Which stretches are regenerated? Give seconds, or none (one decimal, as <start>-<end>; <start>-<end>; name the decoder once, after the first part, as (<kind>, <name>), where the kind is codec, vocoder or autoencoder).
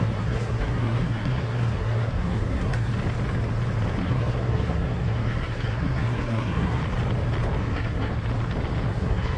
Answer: 0.0-2.9 (codec, SNAC); 4.0-6.8; 7.6-8.1; 8.9-9.4